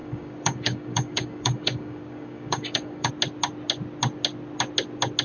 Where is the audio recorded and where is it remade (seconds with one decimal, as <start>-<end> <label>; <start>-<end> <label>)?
0.0-3.1 remade; 3.1-5.2 recorded